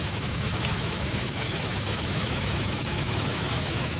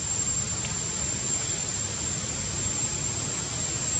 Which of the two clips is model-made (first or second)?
first